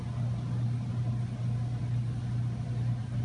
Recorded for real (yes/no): yes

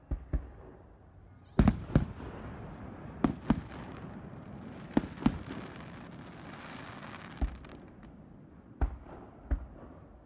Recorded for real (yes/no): yes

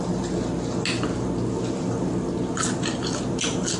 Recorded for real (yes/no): yes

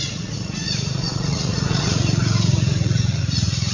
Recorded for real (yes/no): no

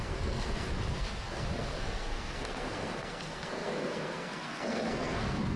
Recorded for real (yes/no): no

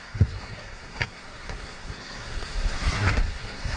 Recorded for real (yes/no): no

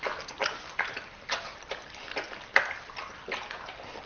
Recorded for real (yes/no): yes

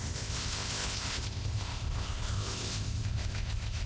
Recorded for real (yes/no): no